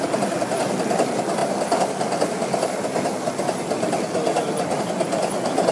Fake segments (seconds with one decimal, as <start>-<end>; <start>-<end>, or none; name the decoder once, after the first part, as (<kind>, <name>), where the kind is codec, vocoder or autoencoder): none